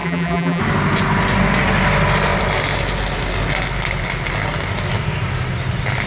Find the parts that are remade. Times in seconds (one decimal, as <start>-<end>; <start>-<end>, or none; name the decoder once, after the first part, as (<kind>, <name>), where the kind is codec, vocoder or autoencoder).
0.0-0.6 (vocoder, BigVGAN v2)